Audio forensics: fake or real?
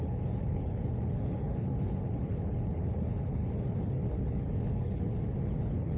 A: fake